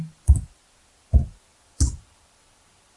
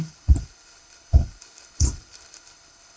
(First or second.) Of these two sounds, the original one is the first